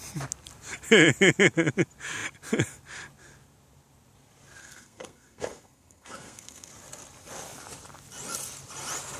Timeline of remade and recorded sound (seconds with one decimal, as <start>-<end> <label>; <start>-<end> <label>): 0.0-4.6 recorded; 4.6-6.7 remade; 6.7-9.2 recorded